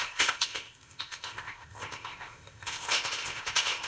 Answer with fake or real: fake